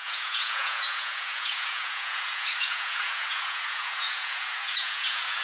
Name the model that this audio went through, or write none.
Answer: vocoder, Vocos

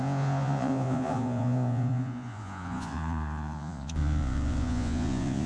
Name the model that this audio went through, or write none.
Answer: vocoder, Vocos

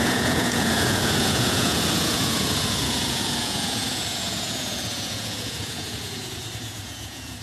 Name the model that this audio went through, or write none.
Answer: vocoder, Vocos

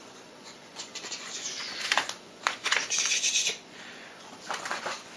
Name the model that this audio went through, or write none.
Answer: vocoder, Vocos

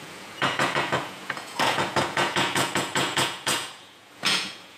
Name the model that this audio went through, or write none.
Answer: vocoder, Vocos